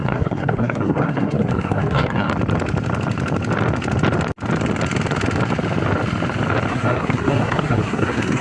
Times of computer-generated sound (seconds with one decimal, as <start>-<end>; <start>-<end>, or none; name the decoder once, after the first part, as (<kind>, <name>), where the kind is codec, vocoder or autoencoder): 0.0-2.3 (codec, SNAC); 6.7-8.4